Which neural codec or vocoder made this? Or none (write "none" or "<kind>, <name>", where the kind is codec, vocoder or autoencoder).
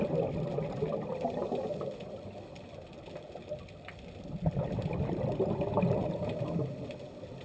none